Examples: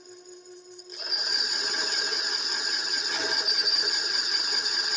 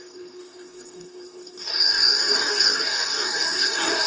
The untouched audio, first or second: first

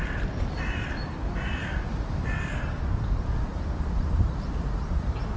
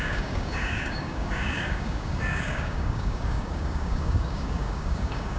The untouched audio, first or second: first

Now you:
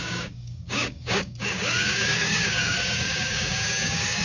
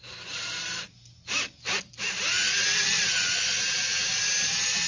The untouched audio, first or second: second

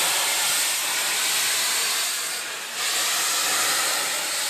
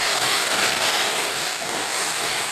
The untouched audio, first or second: first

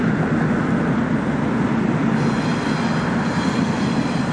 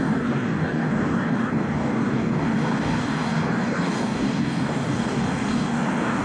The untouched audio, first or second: first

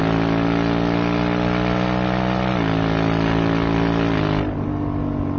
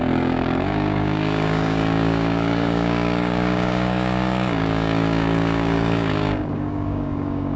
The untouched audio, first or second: first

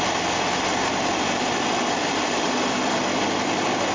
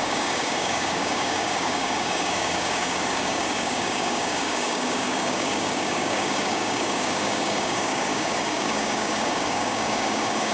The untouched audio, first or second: first